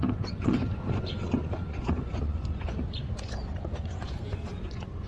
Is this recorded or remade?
remade